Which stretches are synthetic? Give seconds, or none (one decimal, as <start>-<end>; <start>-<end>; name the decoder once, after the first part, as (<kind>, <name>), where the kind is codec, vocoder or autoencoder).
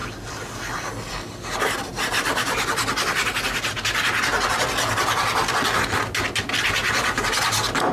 none